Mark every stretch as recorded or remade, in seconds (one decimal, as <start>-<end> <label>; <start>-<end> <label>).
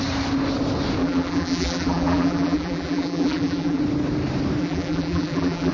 0.0-1.0 recorded; 1.0-3.8 remade; 3.8-4.6 recorded; 4.6-5.7 remade